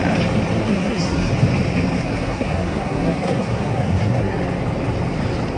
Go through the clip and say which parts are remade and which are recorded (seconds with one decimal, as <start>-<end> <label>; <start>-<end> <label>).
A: 0.0-0.6 recorded; 0.6-1.3 remade; 1.3-2.0 recorded; 2.0-4.4 remade; 4.4-5.6 recorded